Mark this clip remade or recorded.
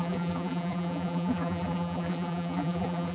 remade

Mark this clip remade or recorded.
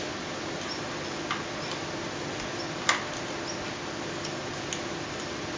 recorded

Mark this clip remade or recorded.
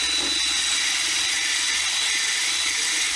recorded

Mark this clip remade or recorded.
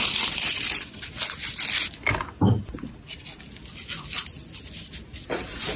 recorded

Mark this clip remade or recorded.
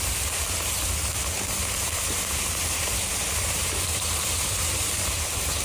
remade